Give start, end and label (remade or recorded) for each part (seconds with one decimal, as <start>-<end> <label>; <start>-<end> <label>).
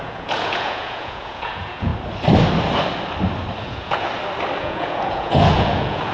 0.0-1.9 remade; 1.9-3.6 recorded; 3.6-4.1 remade; 4.1-4.6 recorded; 4.6-6.1 remade